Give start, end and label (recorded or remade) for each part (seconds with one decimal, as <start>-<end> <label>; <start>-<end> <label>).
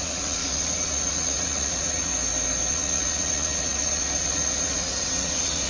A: 0.0-2.1 remade; 2.1-2.7 recorded; 2.7-5.7 remade